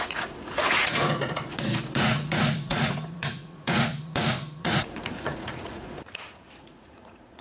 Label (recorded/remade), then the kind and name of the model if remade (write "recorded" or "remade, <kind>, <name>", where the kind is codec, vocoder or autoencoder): remade, vocoder, Vocos